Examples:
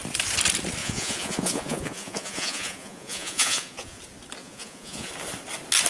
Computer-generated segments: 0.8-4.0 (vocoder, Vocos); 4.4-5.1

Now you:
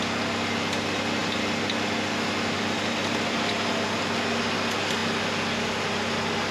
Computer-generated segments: none

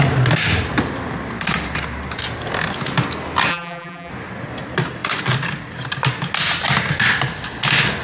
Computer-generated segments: 3.5-4.1 (vocoder, BigVGAN v2)

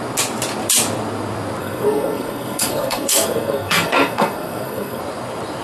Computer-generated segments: 1.6-5.0 (codec, SNAC)

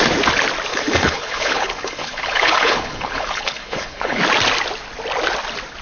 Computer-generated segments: 0.7-4.2 (codec, HILCodec)

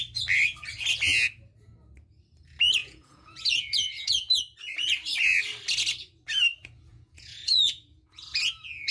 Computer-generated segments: 2.8-4.4 (vocoder, Vocos); 6.9-8.9

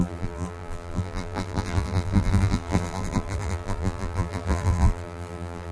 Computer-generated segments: 0.0-5.7 (vocoder, BigVGAN v2)